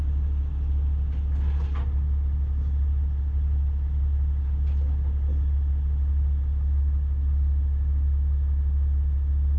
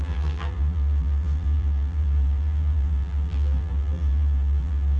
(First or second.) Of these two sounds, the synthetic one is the second